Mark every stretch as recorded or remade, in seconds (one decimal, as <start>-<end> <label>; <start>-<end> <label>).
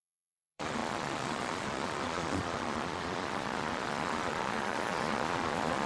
0.0-5.9 remade